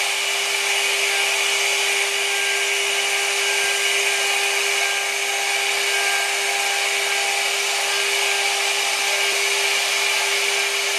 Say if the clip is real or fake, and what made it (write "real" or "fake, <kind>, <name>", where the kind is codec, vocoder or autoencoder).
real